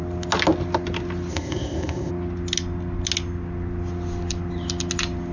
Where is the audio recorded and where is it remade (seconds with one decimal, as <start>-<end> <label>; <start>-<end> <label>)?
0.0-1.3 recorded; 1.3-2.1 remade; 2.1-5.3 recorded